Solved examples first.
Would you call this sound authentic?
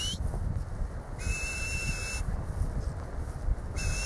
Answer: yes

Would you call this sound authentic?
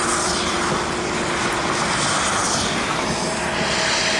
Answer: yes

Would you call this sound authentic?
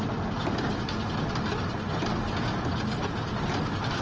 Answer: yes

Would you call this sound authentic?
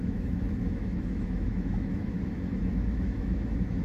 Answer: no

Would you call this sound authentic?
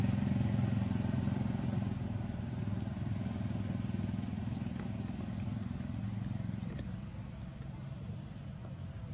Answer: yes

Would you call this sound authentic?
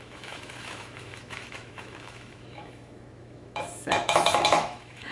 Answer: no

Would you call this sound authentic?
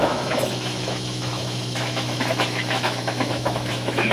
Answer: no